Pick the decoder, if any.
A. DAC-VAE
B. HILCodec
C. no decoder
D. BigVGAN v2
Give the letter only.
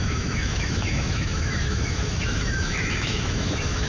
A